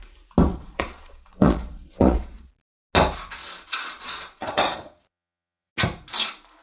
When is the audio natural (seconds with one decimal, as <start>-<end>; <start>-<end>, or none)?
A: 0.0-0.5; 2.5-3.4; 5.7-6.6